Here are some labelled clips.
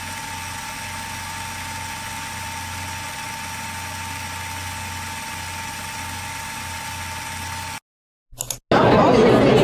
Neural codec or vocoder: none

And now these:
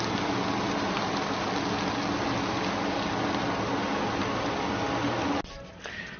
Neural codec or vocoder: none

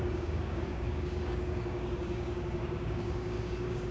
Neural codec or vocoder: codec, DAC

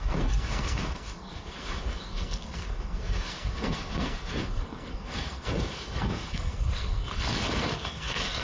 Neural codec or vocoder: codec, SNAC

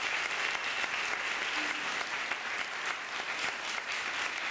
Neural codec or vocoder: none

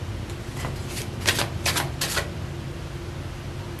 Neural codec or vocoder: none